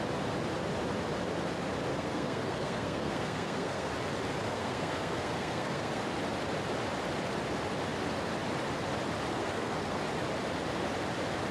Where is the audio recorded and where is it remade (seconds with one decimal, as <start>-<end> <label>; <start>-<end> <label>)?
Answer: 0.0-1.9 recorded; 1.9-3.9 remade; 3.9-4.4 recorded; 4.4-6.0 remade; 6.0-9.3 recorded; 9.3-10.0 remade; 10.0-11.5 recorded